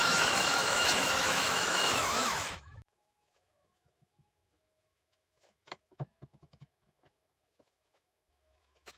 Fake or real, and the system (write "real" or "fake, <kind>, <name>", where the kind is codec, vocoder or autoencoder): fake, autoencoder, DAC-VAE